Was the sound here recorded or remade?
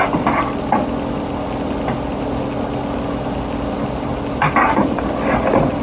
recorded